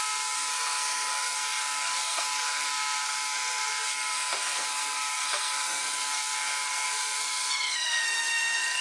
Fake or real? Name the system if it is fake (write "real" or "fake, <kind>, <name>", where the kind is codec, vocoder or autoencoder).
fake, codec, SNAC